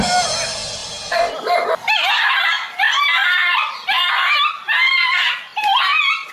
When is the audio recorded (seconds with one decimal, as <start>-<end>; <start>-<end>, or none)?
0.0-3.2; 4.1-6.3